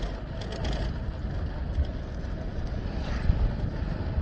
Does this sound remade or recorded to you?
recorded